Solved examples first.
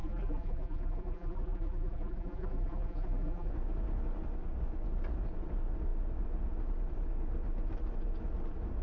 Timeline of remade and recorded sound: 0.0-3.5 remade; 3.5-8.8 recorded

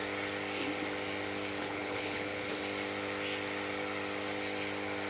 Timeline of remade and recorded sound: 0.0-1.6 recorded; 1.6-2.6 remade; 2.6-5.1 recorded